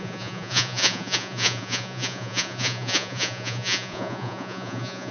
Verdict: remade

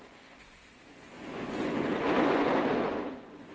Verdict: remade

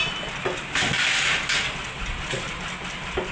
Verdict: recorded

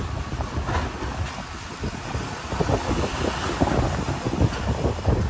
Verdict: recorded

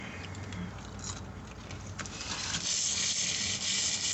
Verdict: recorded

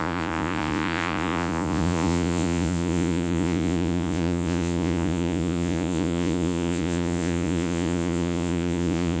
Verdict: remade